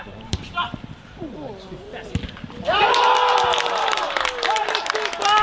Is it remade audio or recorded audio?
recorded